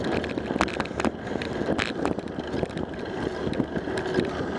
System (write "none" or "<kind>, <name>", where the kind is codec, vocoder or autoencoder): none